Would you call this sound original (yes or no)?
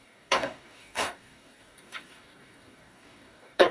no